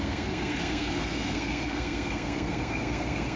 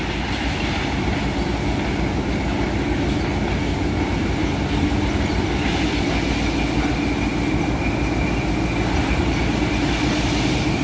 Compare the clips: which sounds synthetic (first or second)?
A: first